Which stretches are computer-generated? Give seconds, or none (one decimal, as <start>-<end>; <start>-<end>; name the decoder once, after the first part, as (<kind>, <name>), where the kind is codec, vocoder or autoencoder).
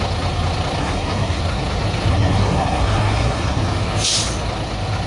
0.8-1.4 (codec, SNAC); 2.1-3.6